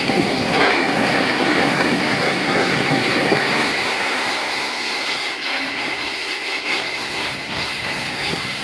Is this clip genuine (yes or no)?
no